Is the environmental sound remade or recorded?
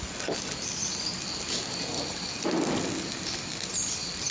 recorded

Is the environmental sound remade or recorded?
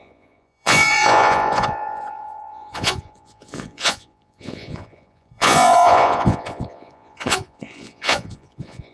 remade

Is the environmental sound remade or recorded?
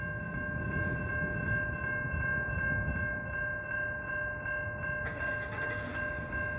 recorded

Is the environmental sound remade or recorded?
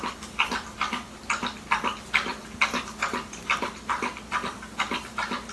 recorded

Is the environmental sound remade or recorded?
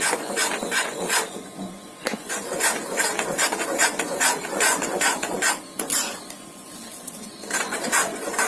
remade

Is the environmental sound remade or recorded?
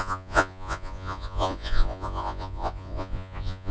remade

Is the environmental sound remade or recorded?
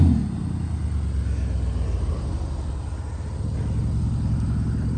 recorded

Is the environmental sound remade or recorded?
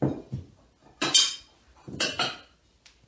recorded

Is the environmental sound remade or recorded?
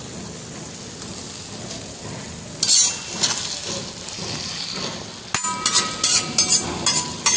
recorded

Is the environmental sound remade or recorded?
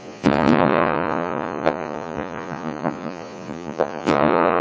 remade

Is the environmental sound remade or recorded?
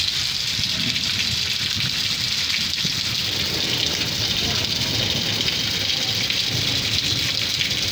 recorded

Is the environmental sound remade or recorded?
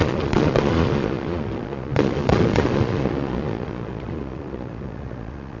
remade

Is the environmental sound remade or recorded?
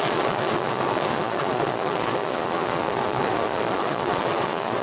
remade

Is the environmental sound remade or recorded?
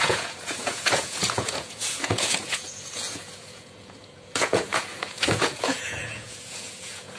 remade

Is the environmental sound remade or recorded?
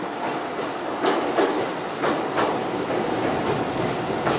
recorded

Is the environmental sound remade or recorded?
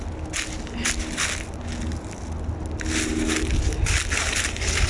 recorded